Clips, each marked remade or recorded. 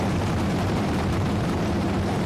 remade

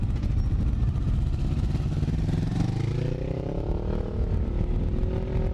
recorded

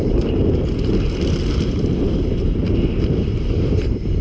remade